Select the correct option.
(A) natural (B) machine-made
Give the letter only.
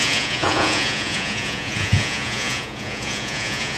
B